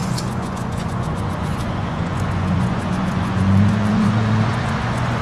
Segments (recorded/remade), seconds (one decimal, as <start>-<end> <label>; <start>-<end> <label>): 0.0-5.2 remade